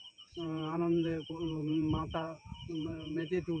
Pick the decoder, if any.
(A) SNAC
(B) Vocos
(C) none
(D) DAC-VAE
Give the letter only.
B